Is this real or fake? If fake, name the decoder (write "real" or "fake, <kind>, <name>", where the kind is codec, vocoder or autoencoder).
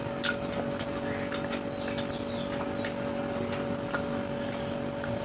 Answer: real